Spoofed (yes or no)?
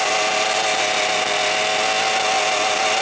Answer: no